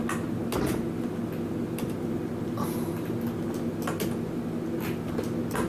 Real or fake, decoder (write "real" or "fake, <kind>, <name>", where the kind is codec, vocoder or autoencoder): real